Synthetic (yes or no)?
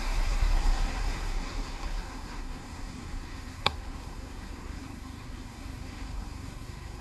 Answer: yes